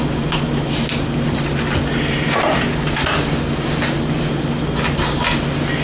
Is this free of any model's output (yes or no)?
yes